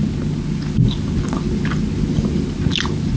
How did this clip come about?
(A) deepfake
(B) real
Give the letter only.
B